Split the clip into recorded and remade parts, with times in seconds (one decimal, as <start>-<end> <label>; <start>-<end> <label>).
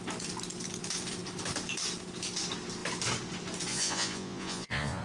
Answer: 0.0-3.7 recorded; 3.7-5.0 remade